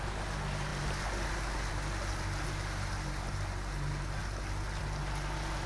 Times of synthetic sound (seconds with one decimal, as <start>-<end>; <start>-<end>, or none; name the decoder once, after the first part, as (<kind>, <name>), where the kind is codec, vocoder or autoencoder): none